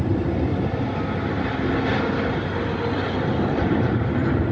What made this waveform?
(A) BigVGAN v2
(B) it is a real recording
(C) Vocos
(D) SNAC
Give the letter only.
B